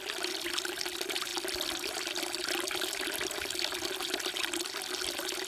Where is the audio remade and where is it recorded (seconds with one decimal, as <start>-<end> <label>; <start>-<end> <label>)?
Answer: 0.0-5.5 recorded